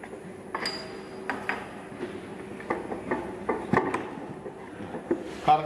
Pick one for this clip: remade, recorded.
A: recorded